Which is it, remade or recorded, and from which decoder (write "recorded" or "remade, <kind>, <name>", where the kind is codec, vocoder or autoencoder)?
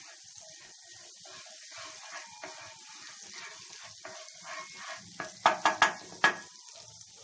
recorded